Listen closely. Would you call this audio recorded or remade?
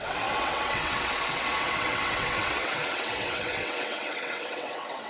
remade